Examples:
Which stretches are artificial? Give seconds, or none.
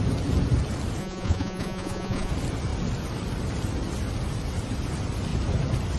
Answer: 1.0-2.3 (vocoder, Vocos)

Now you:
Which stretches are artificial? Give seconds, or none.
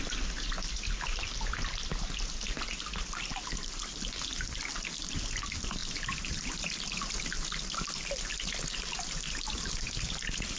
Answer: none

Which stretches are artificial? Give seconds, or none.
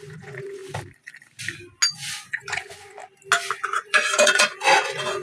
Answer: 0.0-0.6 (vocoder, Vocos); 1.9-3.0; 3.6-5.2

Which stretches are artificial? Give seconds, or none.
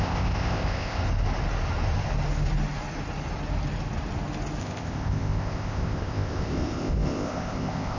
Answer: 0.0-1.0 (codec, ZipCodec); 4.6-8.0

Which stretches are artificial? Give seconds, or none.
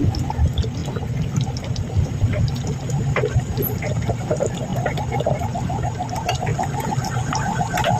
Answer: none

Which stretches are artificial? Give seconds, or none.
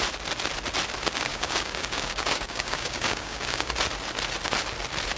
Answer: 1.3-3.7 (codec, DAC)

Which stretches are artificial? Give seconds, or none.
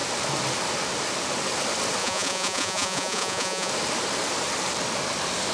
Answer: 2.0-3.7 (vocoder, Vocos)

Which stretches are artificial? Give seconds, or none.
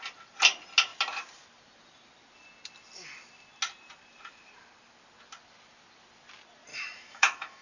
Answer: 6.7-7.6 (autoencoder, DAC-VAE)